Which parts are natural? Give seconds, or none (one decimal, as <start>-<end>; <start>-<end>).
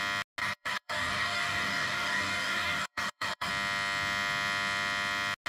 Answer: 0.0-0.4; 3.5-5.5